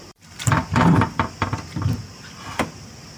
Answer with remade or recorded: remade